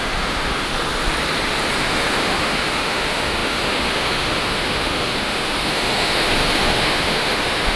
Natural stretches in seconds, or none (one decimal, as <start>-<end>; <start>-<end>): 0.7-1.8